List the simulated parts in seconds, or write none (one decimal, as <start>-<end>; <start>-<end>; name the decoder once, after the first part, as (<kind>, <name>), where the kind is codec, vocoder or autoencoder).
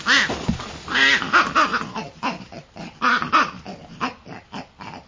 none